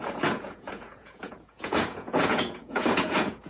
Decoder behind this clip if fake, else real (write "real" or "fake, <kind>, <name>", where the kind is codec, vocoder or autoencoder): fake, vocoder, Vocos